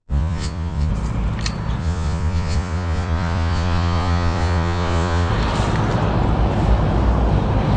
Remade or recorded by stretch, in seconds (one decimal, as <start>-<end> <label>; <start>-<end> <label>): 0.0-0.9 remade; 0.9-1.8 recorded; 1.8-5.3 remade; 5.3-7.8 recorded